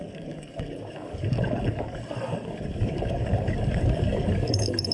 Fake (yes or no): yes